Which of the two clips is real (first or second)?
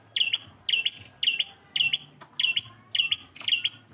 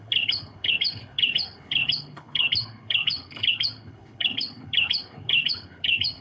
first